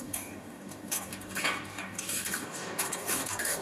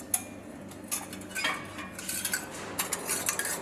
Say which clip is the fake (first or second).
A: first